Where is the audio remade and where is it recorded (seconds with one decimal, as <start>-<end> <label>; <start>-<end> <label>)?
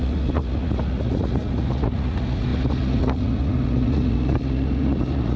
0.0-5.4 remade